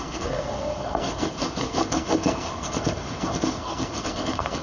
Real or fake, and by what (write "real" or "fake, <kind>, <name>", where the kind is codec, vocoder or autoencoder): fake, codec, SNAC